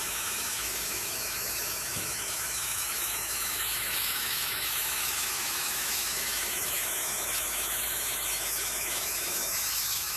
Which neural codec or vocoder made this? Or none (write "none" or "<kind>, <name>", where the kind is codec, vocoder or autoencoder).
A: autoencoder, DAC-VAE